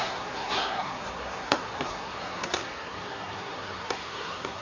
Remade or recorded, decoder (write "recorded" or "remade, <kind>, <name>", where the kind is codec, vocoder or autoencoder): remade, codec, SNAC